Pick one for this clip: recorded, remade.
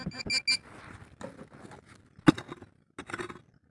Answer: recorded